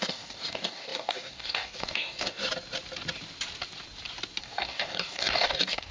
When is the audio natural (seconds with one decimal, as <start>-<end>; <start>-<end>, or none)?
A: 2.4-4.4